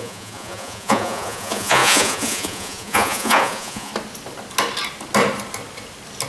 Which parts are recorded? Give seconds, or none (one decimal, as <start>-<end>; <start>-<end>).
3.9-6.3